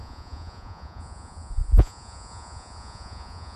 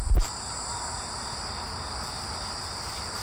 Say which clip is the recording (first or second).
second